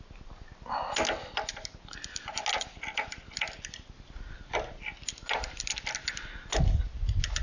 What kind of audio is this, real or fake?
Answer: real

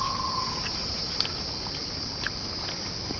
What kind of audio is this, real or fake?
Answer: real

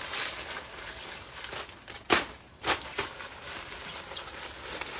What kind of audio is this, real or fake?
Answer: real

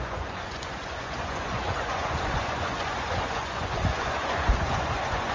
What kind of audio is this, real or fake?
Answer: fake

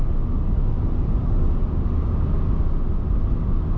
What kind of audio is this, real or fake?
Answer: real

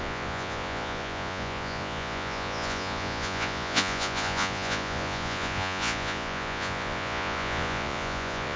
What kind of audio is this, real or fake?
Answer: fake